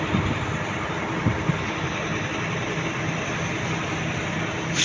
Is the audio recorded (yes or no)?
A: yes